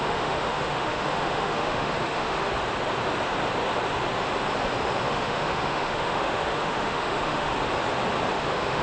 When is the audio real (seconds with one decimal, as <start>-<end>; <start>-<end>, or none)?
2.5-5.1; 7.5-8.3